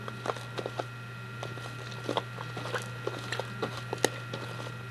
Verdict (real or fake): real